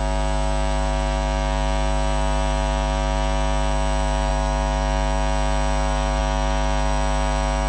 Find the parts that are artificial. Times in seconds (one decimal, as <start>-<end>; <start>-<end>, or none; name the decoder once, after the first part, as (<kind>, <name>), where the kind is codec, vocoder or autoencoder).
none